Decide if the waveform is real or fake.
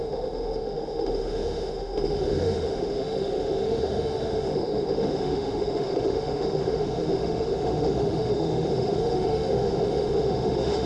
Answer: fake